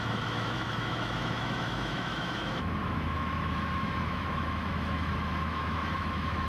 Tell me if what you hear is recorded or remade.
remade